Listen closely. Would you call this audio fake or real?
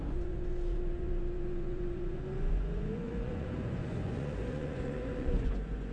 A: fake